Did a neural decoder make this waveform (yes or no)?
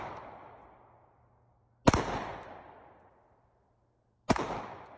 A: no